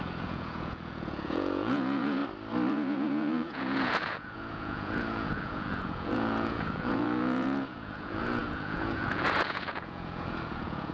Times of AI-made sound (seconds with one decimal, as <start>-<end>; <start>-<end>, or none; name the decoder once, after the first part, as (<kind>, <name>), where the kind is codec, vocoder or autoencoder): 0.0-2.2 (vocoder, Vocos); 2.7-10.9